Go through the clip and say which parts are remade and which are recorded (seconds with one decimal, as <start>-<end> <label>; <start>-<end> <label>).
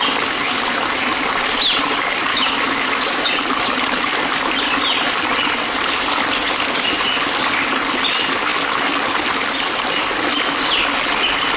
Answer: 0.0-2.3 recorded; 2.3-3.3 remade; 3.3-11.6 recorded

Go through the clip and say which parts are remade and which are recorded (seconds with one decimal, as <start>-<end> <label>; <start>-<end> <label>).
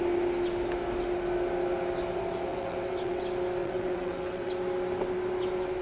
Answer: 0.0-2.5 recorded; 2.5-3.2 remade; 3.2-3.6 recorded; 3.6-4.5 remade; 4.5-5.8 recorded